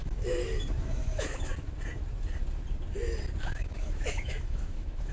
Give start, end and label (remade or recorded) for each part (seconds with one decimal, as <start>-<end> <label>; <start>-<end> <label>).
0.0-1.5 remade; 1.5-3.4 recorded; 3.4-5.1 remade